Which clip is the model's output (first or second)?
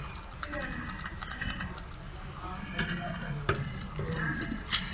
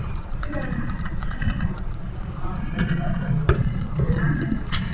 second